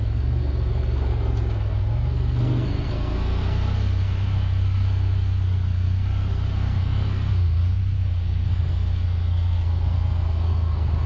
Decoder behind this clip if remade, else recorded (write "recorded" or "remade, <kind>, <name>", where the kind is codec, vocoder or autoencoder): remade, codec, SNAC